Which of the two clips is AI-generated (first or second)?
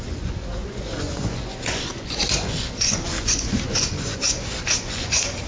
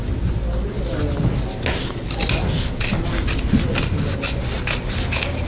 first